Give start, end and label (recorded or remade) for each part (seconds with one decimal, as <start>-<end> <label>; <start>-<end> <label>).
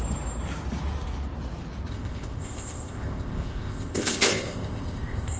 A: 0.0-1.9 recorded; 1.9-5.4 remade